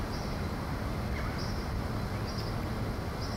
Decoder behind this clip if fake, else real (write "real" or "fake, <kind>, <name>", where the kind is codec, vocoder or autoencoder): real